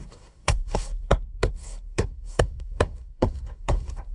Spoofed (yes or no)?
yes